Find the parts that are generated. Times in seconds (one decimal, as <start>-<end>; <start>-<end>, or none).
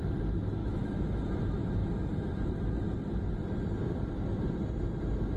0.6-1.2